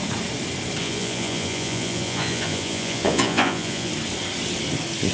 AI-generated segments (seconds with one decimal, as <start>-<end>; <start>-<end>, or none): 0.8-3.9